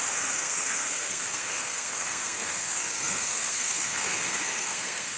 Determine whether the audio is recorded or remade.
remade